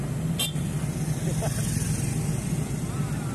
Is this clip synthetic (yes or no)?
no